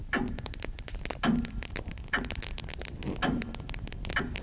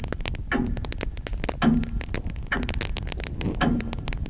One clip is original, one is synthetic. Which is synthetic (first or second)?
first